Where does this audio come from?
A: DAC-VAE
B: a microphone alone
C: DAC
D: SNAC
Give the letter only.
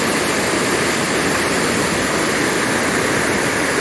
B